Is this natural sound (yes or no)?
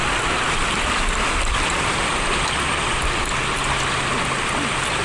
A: yes